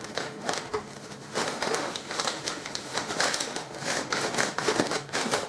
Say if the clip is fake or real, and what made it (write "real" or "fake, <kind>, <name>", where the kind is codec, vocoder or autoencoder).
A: fake, autoencoder, DAC-VAE